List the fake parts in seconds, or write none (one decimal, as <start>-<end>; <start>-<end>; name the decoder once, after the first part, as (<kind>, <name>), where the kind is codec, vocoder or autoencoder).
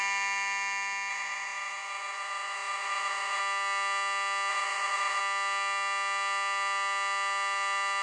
1.1-3.4 (vocoder, Vocos); 4.5-5.2